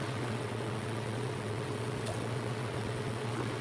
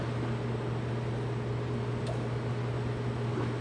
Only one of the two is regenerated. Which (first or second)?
first